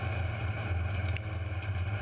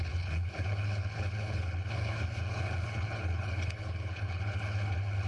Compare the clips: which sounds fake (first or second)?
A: second